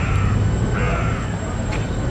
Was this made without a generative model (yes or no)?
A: yes